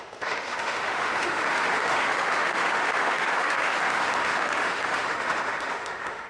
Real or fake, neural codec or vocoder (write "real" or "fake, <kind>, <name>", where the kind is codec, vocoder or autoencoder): fake, autoencoder, DAC-VAE